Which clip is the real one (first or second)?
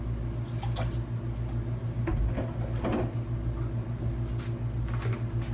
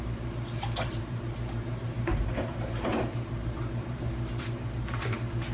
first